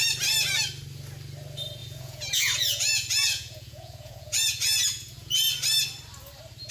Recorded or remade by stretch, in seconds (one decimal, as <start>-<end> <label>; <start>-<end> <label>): 0.0-1.8 recorded; 1.8-5.5 remade; 5.5-6.7 recorded